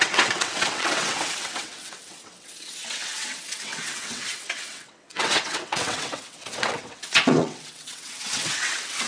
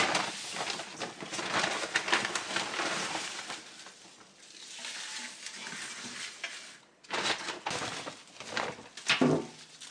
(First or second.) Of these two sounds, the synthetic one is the first